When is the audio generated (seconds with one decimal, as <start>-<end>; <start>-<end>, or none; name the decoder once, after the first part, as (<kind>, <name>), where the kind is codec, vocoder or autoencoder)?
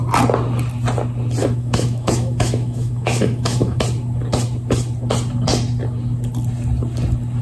1.4-3.8 (autoencoder, DAC-VAE)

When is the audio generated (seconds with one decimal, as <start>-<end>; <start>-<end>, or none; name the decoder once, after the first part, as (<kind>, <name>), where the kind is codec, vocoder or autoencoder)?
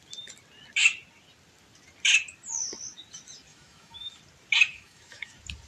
3.5-4.2 (autoencoder, DAC-VAE); 4.7-5.3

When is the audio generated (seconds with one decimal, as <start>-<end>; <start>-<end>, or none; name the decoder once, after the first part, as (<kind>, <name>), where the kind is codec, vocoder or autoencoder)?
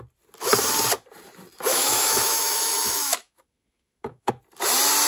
1.7-4.3 (autoencoder, DAC-VAE)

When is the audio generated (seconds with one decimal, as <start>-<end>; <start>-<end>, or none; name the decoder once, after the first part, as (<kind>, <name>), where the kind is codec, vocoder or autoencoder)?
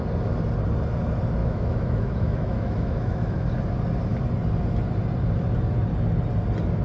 1.4-3.5 (autoencoder, DAC-VAE)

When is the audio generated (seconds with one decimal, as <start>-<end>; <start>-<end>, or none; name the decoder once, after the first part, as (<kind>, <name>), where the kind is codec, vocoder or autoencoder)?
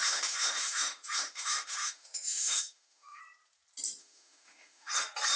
0.0-3.2 (autoencoder, DAC-VAE); 4.0-4.9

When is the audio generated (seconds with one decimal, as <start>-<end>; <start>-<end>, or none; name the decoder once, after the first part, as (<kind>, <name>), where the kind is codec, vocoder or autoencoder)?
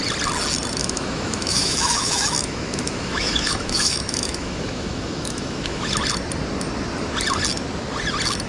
0.8-5.9 (autoencoder, DAC-VAE)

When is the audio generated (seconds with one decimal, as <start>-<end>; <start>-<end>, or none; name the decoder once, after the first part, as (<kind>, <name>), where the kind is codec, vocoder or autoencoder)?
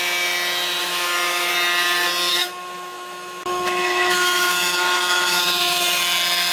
0.8-1.5 (autoencoder, DAC-VAE); 2.3-6.0